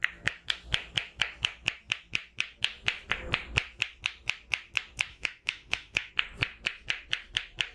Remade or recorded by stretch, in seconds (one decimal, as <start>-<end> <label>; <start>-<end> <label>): 0.0-5.1 recorded; 5.1-6.1 remade; 6.1-7.7 recorded